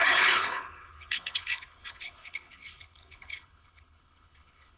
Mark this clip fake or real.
fake